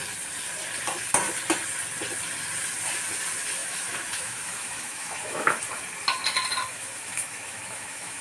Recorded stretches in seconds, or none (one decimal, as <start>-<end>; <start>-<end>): 0.0-3.6; 5.6-6.7